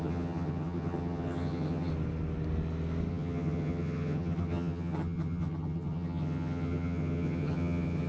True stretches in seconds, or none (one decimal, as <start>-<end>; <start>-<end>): 1.9-3.1